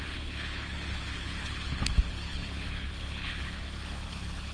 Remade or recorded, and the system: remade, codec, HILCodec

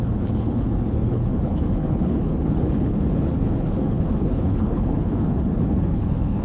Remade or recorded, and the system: remade, codec, HILCodec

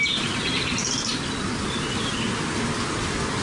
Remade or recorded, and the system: recorded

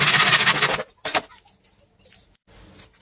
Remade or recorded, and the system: recorded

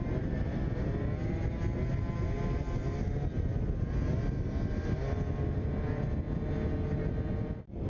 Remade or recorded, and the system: recorded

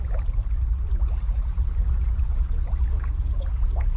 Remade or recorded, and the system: recorded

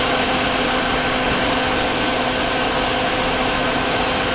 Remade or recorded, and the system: recorded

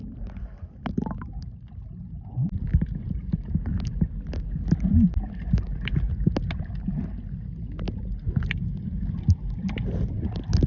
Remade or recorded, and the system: recorded